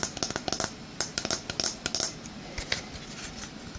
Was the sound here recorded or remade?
recorded